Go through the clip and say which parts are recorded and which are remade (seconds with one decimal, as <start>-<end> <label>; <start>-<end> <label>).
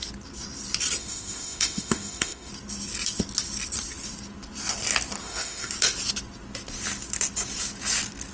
0.0-1.0 recorded; 1.0-2.5 remade; 2.5-5.2 recorded; 5.2-5.7 remade; 5.7-8.3 recorded